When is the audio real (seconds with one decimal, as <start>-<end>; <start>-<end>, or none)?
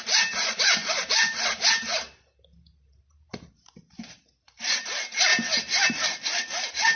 5.3-5.9